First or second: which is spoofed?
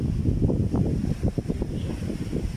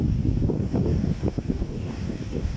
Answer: second